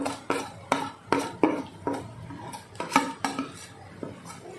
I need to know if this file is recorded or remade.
recorded